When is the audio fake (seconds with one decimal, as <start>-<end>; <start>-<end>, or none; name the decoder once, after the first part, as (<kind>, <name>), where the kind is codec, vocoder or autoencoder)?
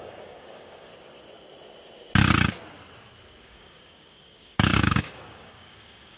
0.0-0.9 (codec, DAC); 3.4-6.2